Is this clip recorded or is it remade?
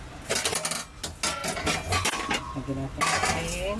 recorded